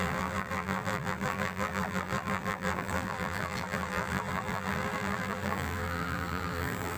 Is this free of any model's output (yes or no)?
no